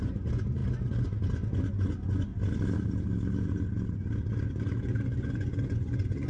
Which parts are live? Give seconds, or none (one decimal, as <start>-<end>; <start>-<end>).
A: 2.3-4.2